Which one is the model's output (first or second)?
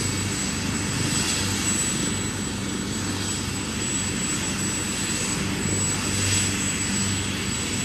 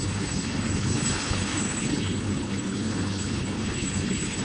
second